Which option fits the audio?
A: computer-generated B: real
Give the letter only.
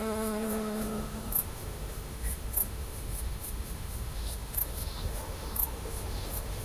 A